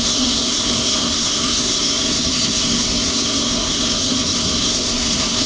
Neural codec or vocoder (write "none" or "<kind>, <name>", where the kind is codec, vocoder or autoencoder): codec, SNAC